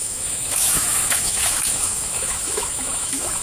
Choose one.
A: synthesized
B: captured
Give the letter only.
A